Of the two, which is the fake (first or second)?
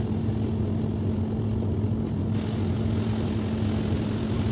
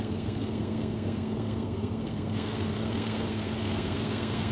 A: second